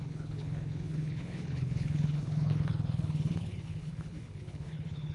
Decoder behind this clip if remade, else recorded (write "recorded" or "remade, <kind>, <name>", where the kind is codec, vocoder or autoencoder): remade, codec, HILCodec